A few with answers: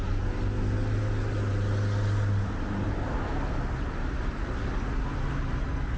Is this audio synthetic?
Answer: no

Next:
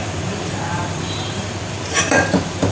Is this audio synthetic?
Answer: yes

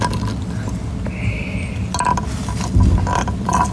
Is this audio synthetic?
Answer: no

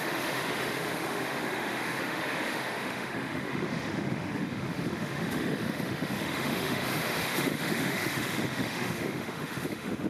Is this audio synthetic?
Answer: yes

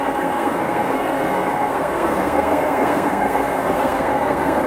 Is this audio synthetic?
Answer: yes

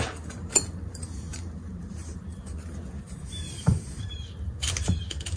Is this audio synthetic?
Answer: yes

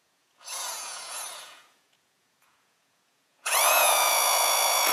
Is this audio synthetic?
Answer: yes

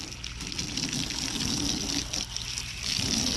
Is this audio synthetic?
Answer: no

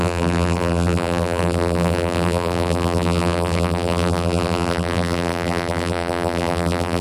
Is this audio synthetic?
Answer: yes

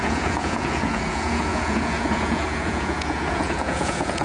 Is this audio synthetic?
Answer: yes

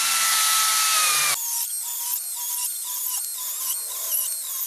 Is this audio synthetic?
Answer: no